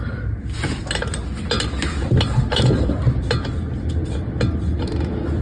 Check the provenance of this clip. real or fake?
real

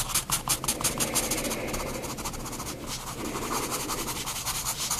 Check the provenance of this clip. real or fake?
real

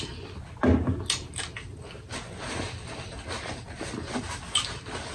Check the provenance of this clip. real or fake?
real